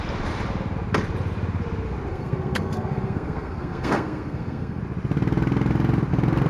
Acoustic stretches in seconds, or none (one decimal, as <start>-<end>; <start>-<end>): 0.0-2.1; 4.8-6.5